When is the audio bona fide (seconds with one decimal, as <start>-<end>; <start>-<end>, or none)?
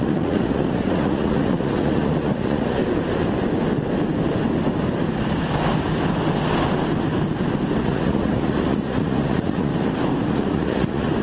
2.8-7.8; 9.7-10.3